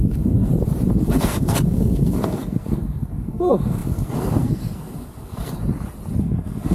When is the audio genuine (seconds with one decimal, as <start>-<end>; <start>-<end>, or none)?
0.5-1.0; 5.6-6.2